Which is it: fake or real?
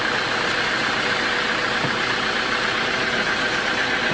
real